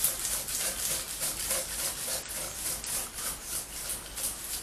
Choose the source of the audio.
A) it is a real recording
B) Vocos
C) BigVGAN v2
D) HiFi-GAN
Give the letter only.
A